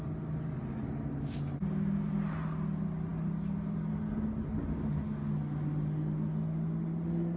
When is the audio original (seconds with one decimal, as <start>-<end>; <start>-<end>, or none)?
0.0-7.4